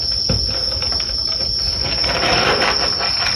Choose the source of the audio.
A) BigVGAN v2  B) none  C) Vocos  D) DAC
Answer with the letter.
B